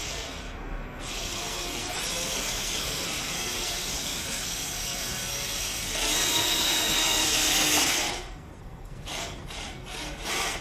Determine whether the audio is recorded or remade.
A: remade